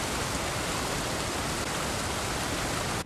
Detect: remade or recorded recorded